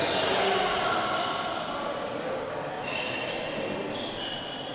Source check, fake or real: real